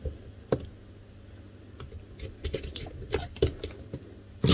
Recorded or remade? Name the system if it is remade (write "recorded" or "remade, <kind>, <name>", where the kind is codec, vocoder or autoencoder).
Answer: recorded